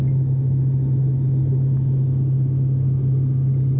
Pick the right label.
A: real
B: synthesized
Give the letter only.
A